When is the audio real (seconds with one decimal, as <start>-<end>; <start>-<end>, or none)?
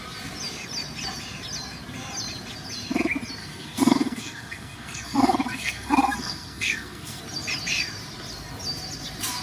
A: 0.0-3.4; 7.2-9.4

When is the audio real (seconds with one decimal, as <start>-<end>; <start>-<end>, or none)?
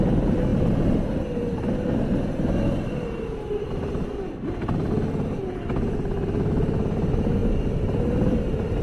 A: 0.0-8.8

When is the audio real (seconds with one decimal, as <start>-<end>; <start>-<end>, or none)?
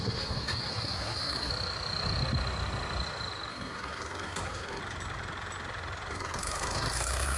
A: 1.5-3.5; 4.8-6.1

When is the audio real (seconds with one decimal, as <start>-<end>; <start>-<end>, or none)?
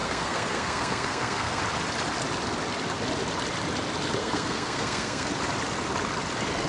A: 1.6-4.2; 5.3-6.7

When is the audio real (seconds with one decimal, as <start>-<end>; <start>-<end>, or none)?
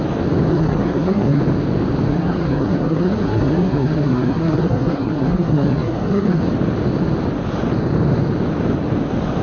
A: 0.0-0.5; 1.4-2.1; 6.4-9.4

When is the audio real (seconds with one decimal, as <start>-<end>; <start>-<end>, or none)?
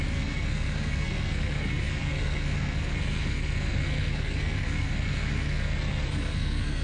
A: none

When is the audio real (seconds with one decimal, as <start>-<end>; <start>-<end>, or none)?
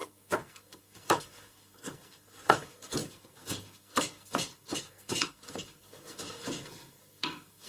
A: none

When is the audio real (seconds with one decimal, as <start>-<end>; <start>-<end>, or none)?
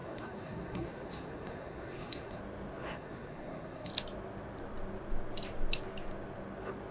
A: 2.4-2.8; 3.9-6.9